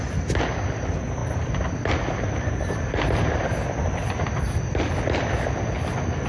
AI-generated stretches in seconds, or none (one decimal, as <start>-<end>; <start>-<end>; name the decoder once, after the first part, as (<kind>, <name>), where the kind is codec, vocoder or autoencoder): none